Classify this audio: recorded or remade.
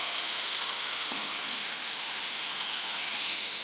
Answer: remade